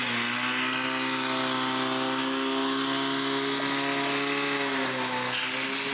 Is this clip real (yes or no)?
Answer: yes